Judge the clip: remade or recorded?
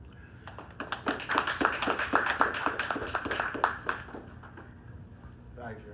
recorded